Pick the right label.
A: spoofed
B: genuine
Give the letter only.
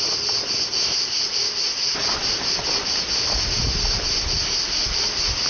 B